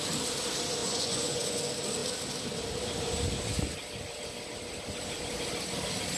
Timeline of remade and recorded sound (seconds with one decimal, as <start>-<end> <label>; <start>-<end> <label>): 0.0-0.8 recorded; 0.8-1.6 remade; 1.6-6.2 recorded